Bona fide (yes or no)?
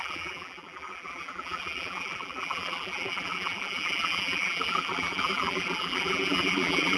no